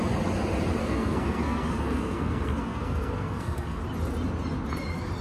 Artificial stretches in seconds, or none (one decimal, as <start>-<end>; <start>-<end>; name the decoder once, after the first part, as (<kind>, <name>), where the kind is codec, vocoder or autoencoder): 0.8-3.8 (codec, SNAC)